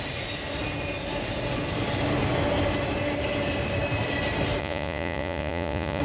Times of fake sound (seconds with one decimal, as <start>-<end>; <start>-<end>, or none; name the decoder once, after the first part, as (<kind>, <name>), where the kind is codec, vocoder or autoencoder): 4.6-6.0 (vocoder, Vocos)